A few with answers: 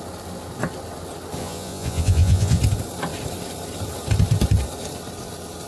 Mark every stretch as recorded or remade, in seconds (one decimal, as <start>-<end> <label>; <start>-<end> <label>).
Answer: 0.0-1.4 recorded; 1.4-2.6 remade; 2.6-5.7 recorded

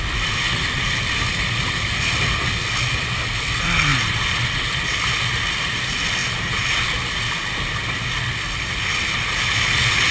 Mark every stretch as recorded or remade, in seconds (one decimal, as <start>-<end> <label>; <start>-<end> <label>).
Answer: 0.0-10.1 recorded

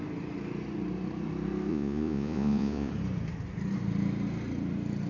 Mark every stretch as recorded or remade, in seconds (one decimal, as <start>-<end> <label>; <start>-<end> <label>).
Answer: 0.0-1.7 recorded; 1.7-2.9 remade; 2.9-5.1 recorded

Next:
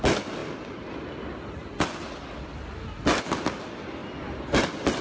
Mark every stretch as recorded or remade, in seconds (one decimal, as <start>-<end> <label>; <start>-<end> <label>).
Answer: 0.0-5.0 recorded

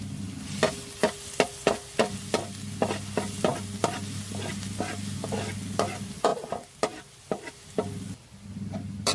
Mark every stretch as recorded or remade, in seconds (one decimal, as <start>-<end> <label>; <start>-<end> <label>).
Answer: 0.0-9.1 recorded